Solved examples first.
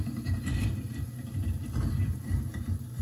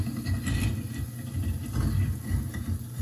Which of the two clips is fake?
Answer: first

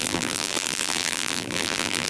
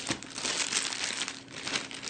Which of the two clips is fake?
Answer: first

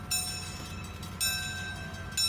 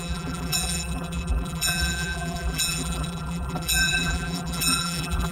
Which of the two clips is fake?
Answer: second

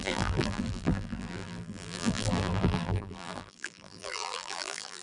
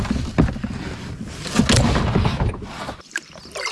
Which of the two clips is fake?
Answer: first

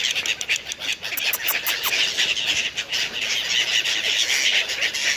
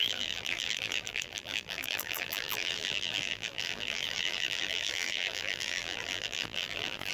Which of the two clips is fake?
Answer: second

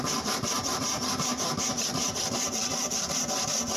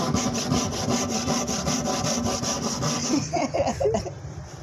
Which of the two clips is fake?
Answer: first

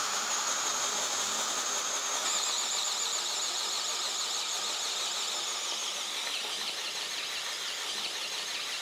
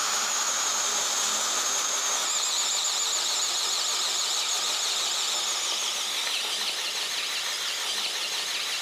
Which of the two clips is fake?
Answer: first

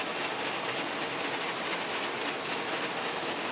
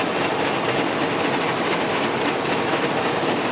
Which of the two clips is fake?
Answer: second